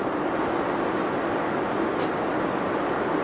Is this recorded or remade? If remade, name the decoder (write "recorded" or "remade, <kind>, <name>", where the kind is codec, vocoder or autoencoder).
recorded